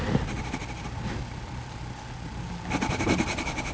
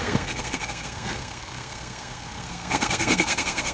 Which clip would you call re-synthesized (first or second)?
second